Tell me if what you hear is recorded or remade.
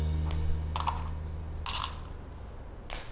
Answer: recorded